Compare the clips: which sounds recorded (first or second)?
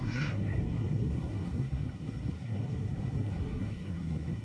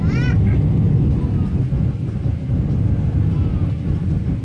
second